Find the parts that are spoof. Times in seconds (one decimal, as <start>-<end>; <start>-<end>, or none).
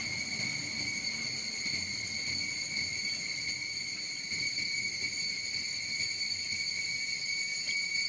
none